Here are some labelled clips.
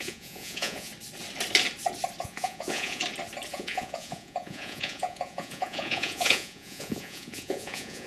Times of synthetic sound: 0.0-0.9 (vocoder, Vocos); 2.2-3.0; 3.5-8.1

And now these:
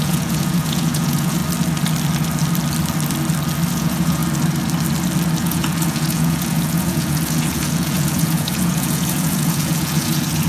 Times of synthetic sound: 0.0-1.4 (vocoder, Vocos); 3.7-4.2; 5.4-10.5

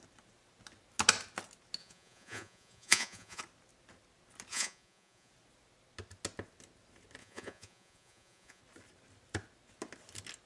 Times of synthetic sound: 1.8-3.4 (vocoder, Vocos); 4.5-5.3; 7.2-8.6

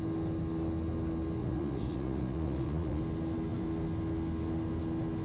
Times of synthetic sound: 1.4-3.0 (vocoder, Vocos)